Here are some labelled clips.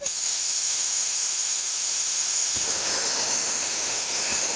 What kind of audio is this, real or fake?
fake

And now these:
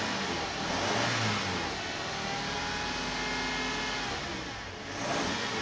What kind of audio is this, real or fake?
real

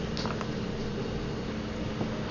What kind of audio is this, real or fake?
real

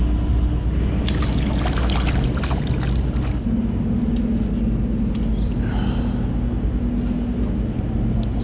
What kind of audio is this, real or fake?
real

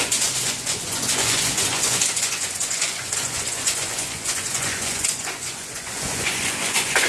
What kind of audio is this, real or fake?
fake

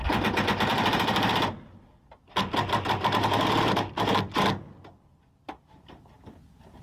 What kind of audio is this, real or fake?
real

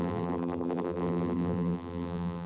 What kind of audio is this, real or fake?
fake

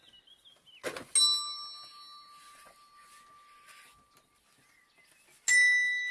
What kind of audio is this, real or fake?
real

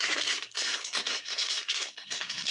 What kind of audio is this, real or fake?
fake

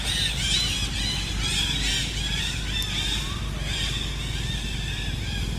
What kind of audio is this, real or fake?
real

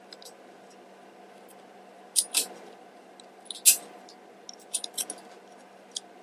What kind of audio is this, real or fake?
real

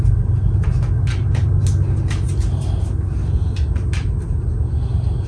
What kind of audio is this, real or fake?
real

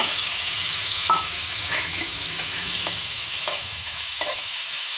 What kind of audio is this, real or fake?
fake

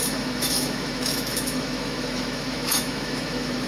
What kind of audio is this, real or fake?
fake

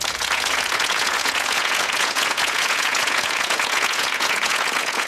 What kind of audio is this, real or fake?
fake